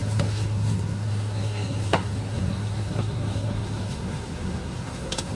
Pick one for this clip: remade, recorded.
remade